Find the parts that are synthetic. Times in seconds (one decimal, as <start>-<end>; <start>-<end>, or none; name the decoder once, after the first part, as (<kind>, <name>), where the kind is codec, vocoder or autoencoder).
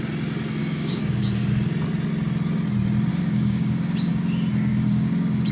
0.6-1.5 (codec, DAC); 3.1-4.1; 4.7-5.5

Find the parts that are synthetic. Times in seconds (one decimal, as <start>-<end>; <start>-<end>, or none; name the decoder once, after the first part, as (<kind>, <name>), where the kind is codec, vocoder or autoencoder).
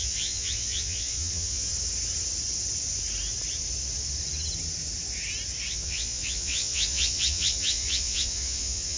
0.0-1.7 (vocoder, Vocos); 5.7-9.0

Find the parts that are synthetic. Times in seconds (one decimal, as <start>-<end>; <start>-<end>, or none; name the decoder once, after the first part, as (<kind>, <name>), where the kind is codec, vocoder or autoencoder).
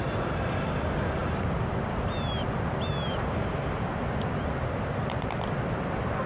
none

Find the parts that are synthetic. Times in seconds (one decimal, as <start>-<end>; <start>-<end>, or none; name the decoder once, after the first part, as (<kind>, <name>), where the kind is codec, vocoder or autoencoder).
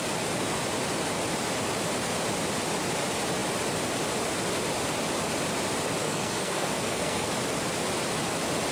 6.0-7.3 (codec, SNAC)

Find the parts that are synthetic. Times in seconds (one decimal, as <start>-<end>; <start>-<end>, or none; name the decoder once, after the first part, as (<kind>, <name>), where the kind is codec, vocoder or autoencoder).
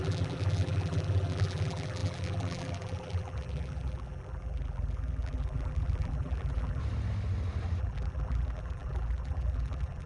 0.0-6.8 (vocoder, BigVGAN v2); 7.8-10.1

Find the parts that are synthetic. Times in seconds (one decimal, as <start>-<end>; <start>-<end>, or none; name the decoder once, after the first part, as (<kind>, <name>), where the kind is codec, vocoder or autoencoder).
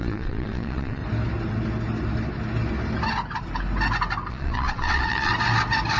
0.0-1.0 (vocoder, WaveNeXt); 4.3-5.3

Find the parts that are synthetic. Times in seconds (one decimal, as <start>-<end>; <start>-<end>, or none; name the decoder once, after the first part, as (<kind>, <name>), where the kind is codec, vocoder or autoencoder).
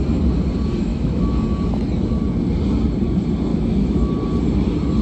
0.9-1.4 (autoencoder, DAC-VAE); 3.5-4.1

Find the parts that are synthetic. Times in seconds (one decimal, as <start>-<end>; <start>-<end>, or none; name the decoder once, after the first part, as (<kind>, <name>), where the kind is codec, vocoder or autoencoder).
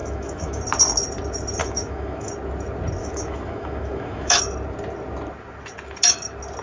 0.0-0.6 (autoencoder, DAC-VAE); 1.6-2.3; 3.0-4.4